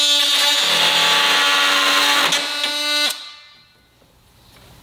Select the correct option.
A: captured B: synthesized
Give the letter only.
A